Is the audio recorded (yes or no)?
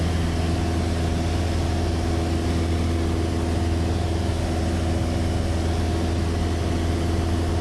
yes